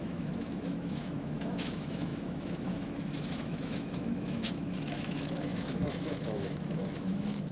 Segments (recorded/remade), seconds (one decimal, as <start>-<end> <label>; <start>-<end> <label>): 0.0-7.5 remade

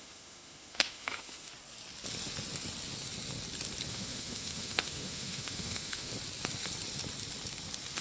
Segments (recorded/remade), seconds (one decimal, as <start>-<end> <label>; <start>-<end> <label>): 0.0-1.5 remade; 1.5-3.9 recorded; 3.9-6.1 remade; 6.1-8.0 recorded

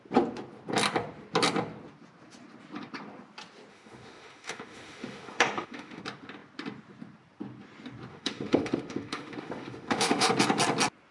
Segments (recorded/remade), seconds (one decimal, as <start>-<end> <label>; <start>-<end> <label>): 0.0-3.7 recorded; 3.7-6.0 remade; 6.0-8.1 recorded; 8.1-10.3 remade; 10.3-11.1 recorded

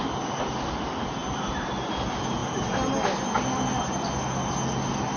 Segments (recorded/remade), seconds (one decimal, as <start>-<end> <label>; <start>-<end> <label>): 0.0-5.2 recorded

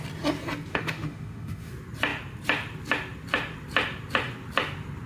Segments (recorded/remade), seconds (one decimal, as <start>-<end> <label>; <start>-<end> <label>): 0.0-0.7 recorded; 0.7-1.7 remade; 1.7-5.1 recorded